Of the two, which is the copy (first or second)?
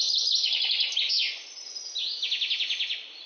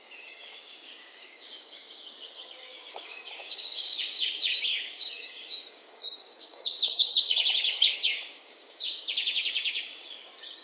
second